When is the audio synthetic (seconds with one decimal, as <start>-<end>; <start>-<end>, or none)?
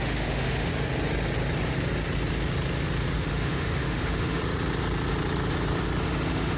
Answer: 0.0-0.7; 3.2-4.4; 6.0-6.6